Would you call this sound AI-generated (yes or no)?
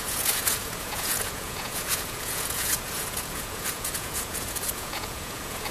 yes